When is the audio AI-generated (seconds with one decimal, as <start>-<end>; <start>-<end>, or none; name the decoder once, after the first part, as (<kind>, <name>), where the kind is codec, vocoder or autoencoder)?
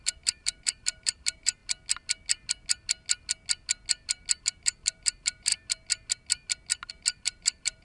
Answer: 0.0-1.6 (vocoder, BigVGAN v2); 4.4-5.5; 6.9-7.8